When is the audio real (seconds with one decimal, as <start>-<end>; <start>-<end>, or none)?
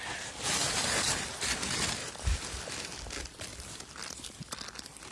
0.0-2.0; 3.0-3.5; 4.2-5.1